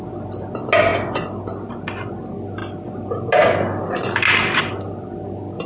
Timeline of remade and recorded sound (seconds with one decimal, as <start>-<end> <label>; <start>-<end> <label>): 0.0-5.7 recorded